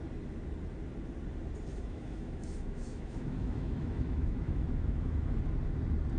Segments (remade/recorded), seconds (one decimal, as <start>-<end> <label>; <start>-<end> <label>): 0.0-1.7 recorded; 1.7-5.4 remade; 5.4-6.2 recorded